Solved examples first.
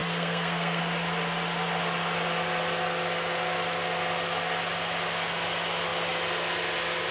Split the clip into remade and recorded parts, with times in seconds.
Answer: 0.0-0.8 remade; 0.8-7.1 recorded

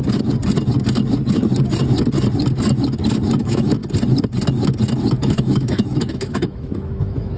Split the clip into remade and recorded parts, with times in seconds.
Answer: 0.0-3.4 recorded; 3.4-3.8 remade; 3.8-5.1 recorded; 5.1-7.4 remade

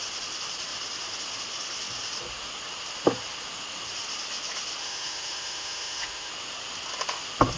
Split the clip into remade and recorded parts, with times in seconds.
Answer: 0.0-4.8 recorded; 4.8-6.3 remade; 6.3-7.6 recorded

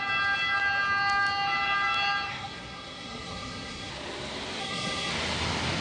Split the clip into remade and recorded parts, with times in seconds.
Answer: 0.0-2.3 recorded; 2.3-3.9 remade; 3.9-4.6 recorded; 4.6-5.1 remade; 5.1-5.8 recorded

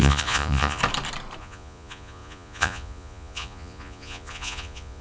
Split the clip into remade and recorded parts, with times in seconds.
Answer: 0.0-0.8 remade; 0.8-1.4 recorded; 1.4-5.0 remade

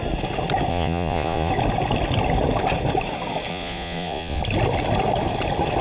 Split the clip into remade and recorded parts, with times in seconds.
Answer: 0.0-0.7 recorded; 0.7-1.5 remade; 1.5-3.5 recorded; 3.5-4.4 remade; 4.4-5.8 recorded

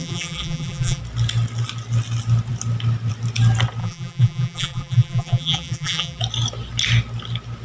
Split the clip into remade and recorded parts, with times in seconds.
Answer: 0.0-1.0 remade; 1.0-3.8 recorded; 3.8-6.2 remade; 6.2-7.6 recorded